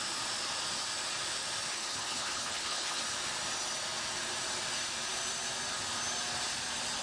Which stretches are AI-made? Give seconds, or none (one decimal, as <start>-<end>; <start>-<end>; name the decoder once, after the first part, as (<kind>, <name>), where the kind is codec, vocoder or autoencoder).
1.7-3.0 (codec, HILCodec)